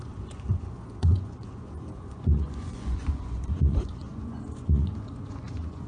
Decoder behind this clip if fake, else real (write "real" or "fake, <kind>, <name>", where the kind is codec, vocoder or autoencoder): fake, vocoder, Vocos